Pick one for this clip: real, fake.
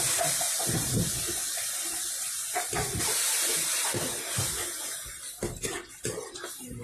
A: real